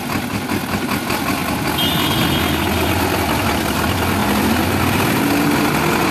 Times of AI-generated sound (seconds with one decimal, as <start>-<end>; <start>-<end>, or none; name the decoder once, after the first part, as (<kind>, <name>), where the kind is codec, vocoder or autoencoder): none